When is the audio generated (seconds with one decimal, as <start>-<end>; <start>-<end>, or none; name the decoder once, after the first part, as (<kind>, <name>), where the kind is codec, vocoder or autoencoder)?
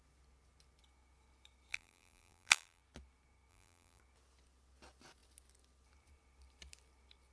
1.7-2.8 (vocoder, BigVGAN v2); 3.5-4.0